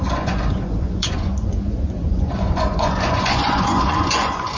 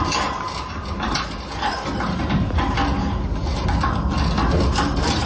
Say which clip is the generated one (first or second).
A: first